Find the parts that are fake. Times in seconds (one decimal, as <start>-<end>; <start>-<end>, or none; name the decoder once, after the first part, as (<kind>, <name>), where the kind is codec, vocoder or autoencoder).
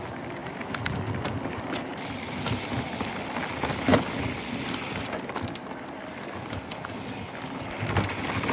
0.4-3.1 (vocoder, BigVGAN v2)